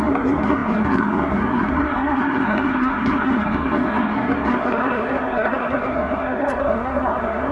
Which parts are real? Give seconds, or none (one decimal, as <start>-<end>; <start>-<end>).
none